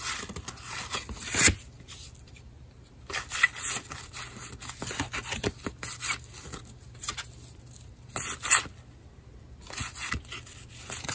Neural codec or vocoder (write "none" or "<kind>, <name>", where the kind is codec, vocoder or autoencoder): none